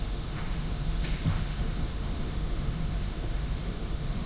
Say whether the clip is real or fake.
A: fake